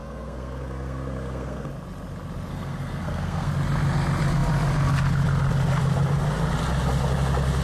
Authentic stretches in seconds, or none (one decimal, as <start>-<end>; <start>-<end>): 1.7-2.5; 3.5-7.6